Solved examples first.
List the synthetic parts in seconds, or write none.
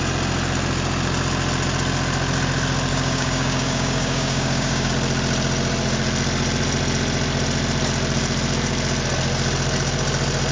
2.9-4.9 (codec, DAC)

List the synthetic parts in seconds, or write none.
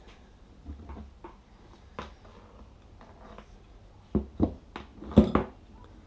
none